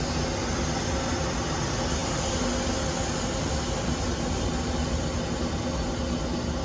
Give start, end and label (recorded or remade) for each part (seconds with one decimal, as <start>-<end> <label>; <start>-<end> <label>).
0.0-6.6 recorded